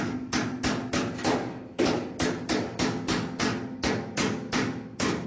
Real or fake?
real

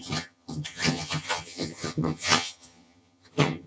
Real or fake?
fake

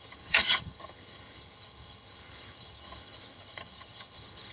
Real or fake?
fake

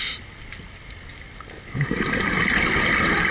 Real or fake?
real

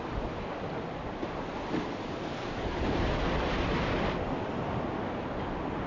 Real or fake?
real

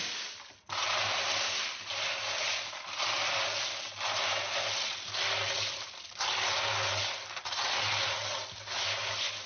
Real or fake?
real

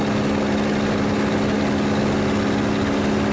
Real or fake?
real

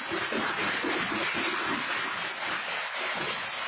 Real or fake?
real